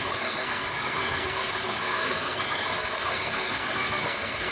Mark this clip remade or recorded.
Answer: remade